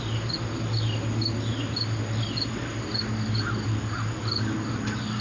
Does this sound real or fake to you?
real